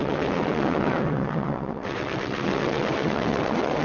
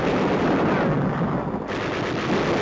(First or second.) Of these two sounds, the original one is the second